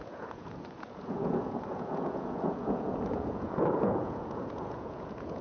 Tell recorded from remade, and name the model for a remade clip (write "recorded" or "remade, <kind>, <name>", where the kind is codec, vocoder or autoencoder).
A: remade, vocoder, Vocos